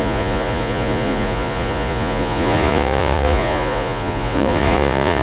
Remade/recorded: remade